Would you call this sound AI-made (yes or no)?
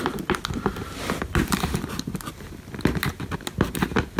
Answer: no